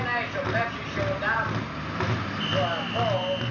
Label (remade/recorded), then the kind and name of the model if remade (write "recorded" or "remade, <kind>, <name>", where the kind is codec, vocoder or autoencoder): recorded